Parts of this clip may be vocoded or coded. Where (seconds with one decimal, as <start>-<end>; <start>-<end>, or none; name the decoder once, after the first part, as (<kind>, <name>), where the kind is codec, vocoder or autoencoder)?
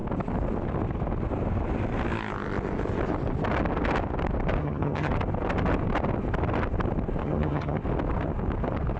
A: 4.6-5.1 (vocoder, HiFi-GAN); 7.2-7.8